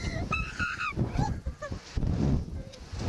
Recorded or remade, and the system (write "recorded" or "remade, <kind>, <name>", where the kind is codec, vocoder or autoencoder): remade, vocoder, Vocos